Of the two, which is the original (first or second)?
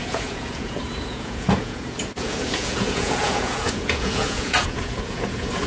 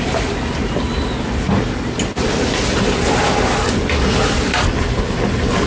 second